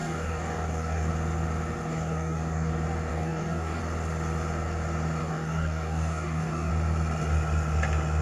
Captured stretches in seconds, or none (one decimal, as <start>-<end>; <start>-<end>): 1.1-1.9; 2.7-3.1; 3.8-5.2; 6.7-8.2